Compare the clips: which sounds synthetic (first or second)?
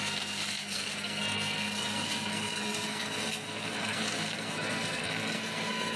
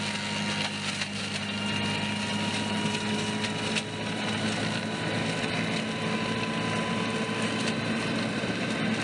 first